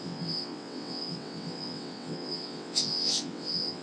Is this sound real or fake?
fake